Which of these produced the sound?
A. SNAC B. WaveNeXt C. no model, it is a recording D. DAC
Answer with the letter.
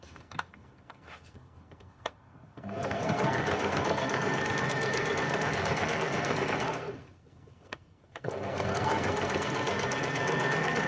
A